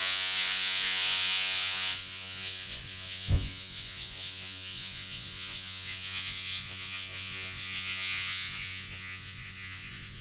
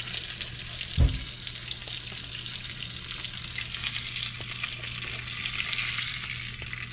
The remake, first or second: first